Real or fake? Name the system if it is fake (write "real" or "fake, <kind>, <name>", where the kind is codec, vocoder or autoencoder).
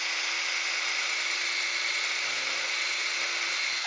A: real